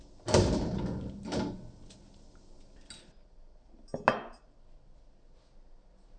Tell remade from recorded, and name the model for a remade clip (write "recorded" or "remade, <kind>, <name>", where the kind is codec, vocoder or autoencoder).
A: recorded